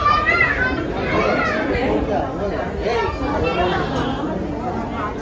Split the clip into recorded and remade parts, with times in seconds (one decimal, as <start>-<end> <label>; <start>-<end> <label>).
0.0-5.2 recorded